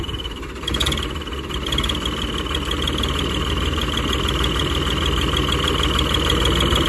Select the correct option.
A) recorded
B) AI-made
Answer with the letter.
A